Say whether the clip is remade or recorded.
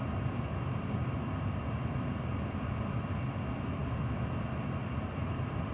recorded